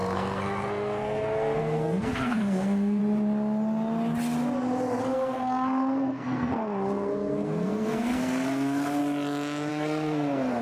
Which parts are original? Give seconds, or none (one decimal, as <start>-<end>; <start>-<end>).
3.0-5.0; 9.0-9.7